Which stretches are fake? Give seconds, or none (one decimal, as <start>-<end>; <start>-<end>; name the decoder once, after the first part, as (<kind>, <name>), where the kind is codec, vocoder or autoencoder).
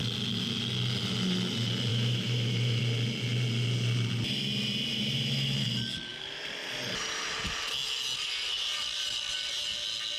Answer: 1.9-2.8 (autoencoder, DAC-VAE)